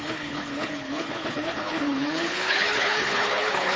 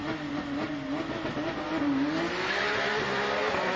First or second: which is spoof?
first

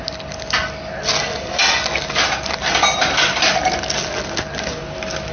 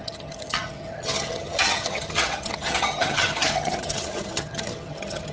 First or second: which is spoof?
second